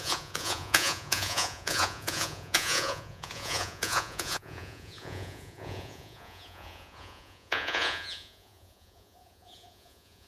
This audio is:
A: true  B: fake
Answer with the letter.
B